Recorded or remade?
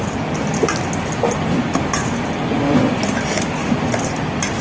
recorded